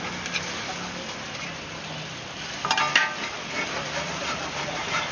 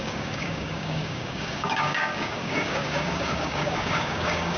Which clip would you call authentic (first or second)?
first